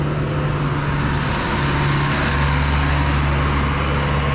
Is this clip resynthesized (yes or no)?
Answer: no